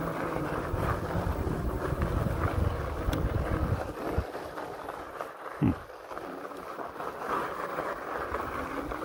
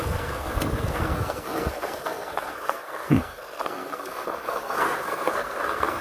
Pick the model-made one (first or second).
second